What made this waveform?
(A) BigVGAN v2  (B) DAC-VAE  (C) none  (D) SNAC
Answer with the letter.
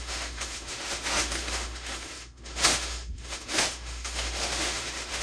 B